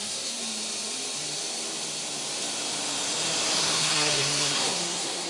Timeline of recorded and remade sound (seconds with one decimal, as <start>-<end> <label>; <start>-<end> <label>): 0.0-0.4 remade; 0.4-3.6 recorded; 3.6-5.3 remade